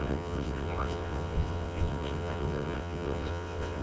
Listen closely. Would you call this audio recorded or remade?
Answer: remade